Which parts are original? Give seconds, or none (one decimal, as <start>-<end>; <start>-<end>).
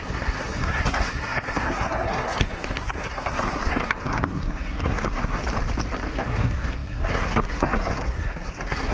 5.4-6.1